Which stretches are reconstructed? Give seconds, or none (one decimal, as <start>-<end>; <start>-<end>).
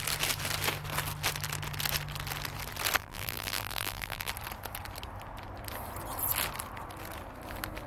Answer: 3.0-4.3